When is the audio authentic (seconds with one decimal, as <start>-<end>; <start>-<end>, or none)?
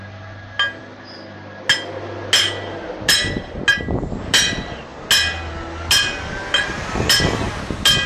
0.0-8.1